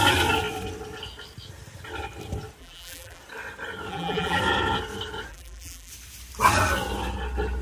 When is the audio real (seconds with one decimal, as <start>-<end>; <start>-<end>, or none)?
0.0-2.6; 3.2-3.9; 4.4-5.3; 5.9-7.6